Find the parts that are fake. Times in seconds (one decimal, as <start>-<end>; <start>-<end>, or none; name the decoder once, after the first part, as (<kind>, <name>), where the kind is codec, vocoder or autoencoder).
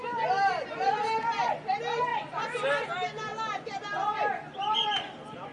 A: none